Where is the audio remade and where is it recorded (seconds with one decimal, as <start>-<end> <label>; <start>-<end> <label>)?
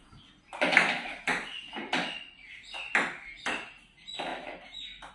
0.0-5.1 recorded